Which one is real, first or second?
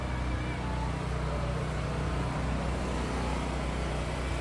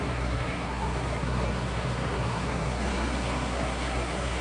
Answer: first